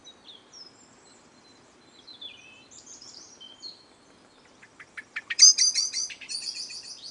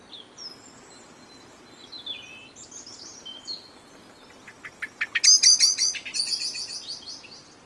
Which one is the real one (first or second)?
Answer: second